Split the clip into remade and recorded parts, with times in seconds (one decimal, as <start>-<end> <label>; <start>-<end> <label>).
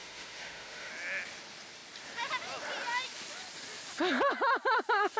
0.0-0.9 remade; 0.9-5.2 recorded